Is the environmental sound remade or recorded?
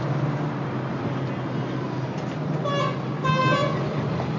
recorded